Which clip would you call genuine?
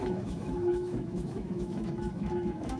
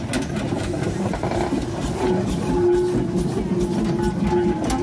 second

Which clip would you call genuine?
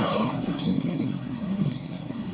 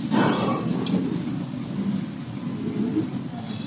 second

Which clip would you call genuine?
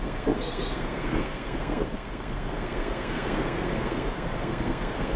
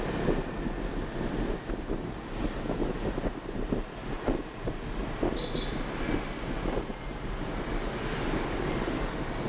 second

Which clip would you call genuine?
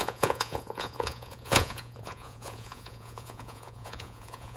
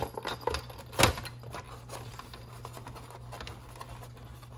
second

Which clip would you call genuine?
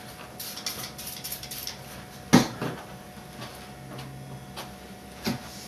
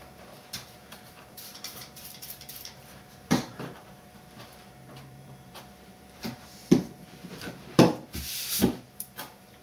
first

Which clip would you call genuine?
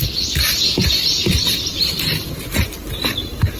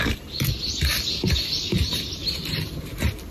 second